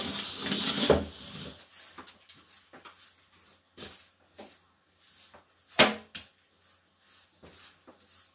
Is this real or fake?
real